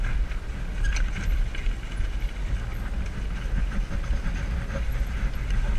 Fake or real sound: real